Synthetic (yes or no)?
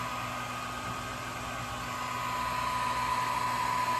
no